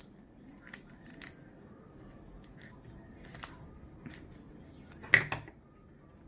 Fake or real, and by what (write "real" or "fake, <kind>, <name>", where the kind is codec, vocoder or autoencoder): real